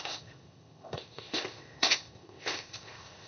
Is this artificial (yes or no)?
yes